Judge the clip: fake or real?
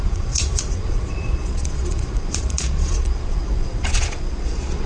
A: fake